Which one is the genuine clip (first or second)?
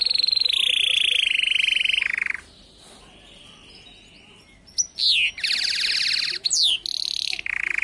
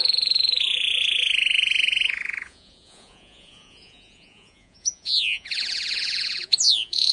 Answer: first